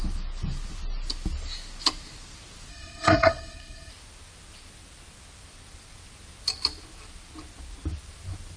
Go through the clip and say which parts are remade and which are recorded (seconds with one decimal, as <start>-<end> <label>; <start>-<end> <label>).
0.0-2.7 recorded; 2.7-3.9 remade; 3.9-8.6 recorded